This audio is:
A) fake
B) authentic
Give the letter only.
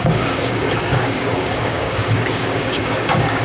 A